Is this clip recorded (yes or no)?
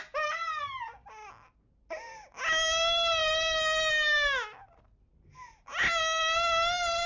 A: yes